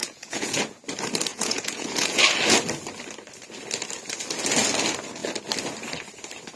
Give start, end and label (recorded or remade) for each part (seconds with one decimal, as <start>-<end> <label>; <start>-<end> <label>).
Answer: 0.0-0.6 remade; 0.6-1.3 recorded; 1.3-2.2 remade; 2.2-6.6 recorded